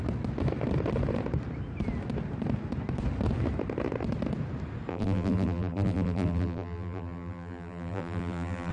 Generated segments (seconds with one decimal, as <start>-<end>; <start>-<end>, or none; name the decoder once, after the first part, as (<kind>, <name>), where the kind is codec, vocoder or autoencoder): 4.9-8.7 (vocoder, BigVGAN v2)